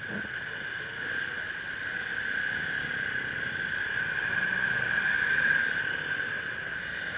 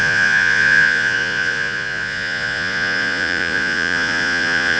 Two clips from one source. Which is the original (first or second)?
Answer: first